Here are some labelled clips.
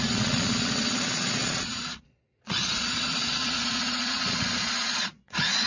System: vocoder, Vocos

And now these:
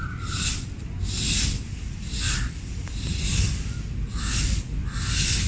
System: none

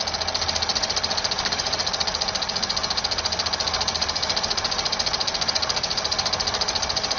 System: none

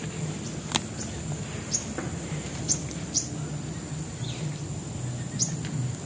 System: none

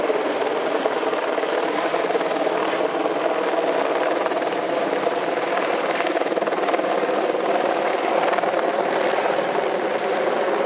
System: none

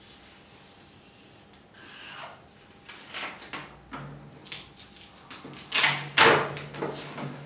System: none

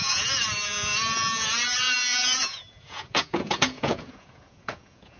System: vocoder, Vocos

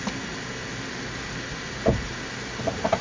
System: none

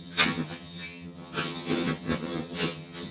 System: vocoder, HiFi-GAN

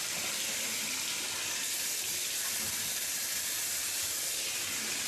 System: none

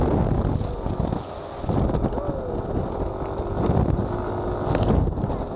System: none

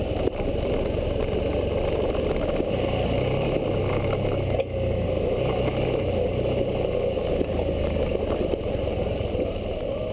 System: none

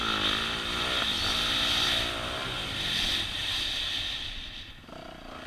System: none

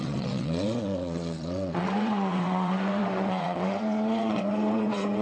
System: vocoder, WaveNeXt